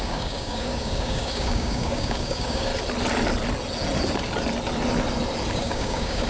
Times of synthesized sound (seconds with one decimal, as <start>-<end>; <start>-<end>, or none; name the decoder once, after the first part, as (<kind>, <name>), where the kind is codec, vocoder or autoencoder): 0.0-2.7 (codec, DAC); 5.5-6.3